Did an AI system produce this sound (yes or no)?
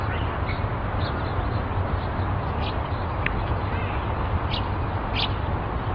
no